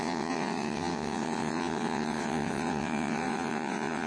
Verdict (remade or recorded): remade